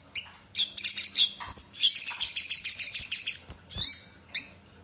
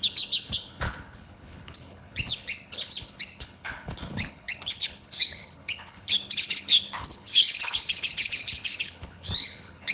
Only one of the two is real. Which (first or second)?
first